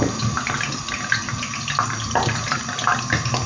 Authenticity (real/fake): real